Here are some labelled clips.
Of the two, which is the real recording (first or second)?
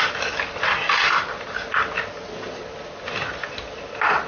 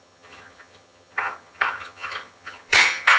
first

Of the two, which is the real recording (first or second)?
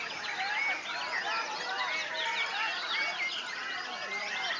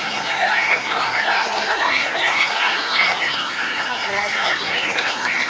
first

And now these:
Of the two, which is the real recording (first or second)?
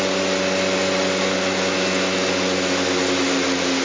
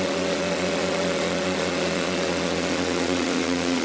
first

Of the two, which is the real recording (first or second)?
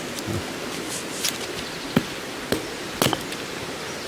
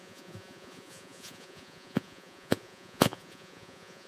first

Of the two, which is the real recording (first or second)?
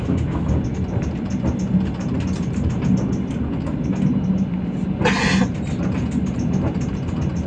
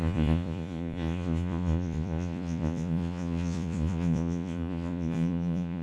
first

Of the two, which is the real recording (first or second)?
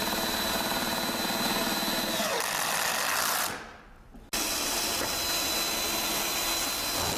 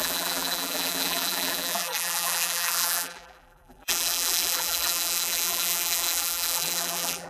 first